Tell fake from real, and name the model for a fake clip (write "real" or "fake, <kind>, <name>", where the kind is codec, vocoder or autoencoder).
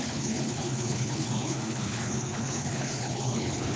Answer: fake, codec, HILCodec